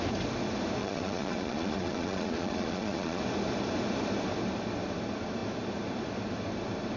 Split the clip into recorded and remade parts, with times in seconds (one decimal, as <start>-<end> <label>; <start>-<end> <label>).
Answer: 0.0-0.8 recorded; 0.8-3.2 remade; 3.2-7.0 recorded